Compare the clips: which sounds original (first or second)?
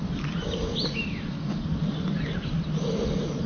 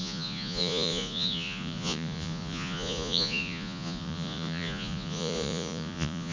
first